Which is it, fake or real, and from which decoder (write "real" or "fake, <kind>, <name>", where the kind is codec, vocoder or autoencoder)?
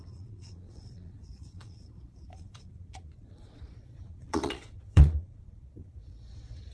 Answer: fake, vocoder, Vocos